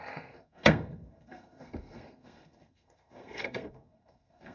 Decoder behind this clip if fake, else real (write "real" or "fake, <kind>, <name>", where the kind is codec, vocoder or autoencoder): fake, codec, SNAC